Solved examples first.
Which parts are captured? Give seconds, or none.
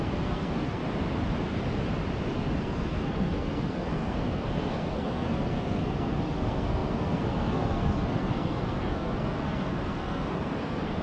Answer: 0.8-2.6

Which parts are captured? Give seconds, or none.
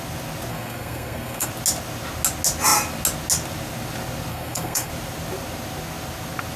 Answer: 0.0-0.5; 1.5-4.3; 4.9-6.6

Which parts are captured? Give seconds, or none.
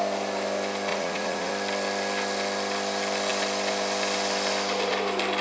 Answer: 0.0-0.9; 1.5-5.4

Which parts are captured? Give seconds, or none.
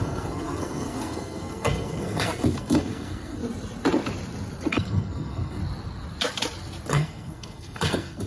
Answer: 3.4-4.7; 5.6-6.9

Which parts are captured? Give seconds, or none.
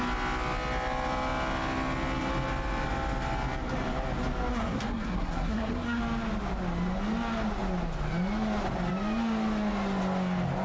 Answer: 0.0-4.5; 6.0-10.6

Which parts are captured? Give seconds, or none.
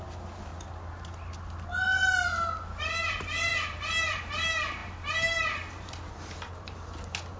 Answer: 0.5-2.8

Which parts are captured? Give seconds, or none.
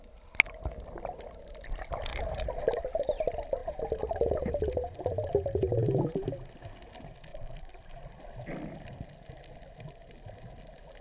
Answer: 0.0-2.1; 2.8-3.6; 6.5-7.3; 8.2-11.0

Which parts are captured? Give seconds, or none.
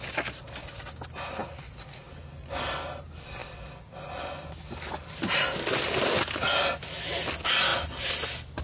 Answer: 0.0-8.6